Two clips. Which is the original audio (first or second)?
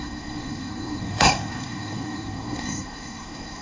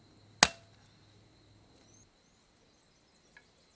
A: second